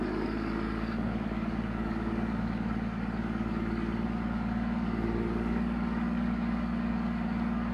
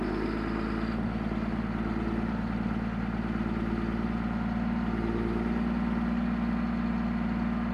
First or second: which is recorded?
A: second